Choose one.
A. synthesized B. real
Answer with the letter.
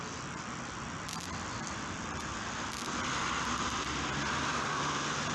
A